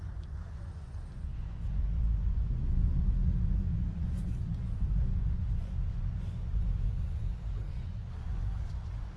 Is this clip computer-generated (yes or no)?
yes